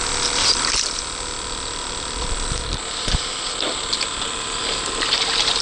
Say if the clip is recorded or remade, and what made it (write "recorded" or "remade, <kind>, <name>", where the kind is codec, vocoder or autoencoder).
recorded